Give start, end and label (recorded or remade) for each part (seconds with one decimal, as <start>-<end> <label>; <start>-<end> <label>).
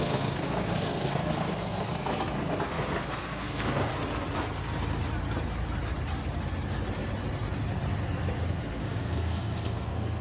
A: 0.0-3.9 remade; 3.9-8.5 recorded; 8.5-10.2 remade